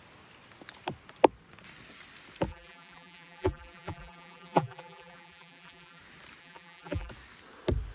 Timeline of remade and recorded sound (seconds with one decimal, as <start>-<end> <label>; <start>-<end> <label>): 0.0-2.5 recorded; 2.5-6.0 remade; 6.0-6.4 recorded; 6.4-7.1 remade; 7.1-7.9 recorded